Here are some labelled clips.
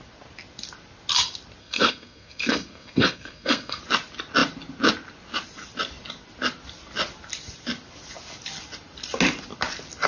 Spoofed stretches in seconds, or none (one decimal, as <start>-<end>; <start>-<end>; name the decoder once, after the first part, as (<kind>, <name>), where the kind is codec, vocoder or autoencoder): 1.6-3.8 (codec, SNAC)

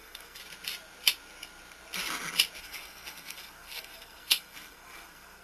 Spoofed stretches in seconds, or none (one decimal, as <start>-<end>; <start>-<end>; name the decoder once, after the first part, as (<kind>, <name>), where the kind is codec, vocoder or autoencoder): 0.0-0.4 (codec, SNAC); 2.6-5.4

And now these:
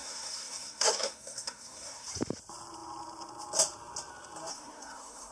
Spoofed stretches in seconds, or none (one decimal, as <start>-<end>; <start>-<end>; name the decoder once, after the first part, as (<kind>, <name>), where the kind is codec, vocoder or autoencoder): 0.0-2.1 (codec, SNAC); 4.5-5.3

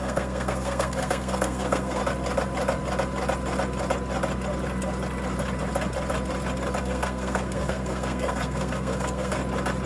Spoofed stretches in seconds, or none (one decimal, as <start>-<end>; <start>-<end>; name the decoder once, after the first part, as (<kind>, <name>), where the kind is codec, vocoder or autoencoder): 0.0-2.0 (codec, SNAC); 6.8-9.4

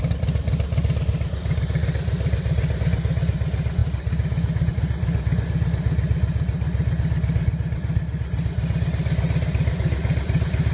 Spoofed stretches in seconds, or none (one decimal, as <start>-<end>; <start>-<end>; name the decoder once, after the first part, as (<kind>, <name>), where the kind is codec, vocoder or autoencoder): none

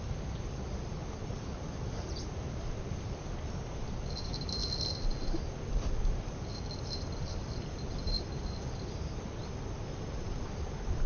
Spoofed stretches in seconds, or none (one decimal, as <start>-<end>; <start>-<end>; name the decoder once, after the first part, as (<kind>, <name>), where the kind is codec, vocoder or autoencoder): none

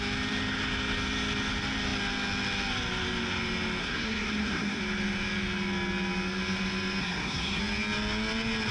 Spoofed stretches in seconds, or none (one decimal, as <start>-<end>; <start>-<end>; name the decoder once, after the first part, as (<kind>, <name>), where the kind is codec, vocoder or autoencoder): 3.8-4.8 (codec, SNAC); 7.0-7.6